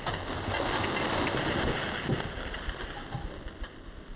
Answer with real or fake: real